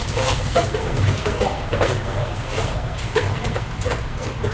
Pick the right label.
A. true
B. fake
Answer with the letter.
B